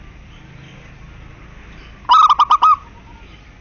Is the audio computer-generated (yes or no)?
no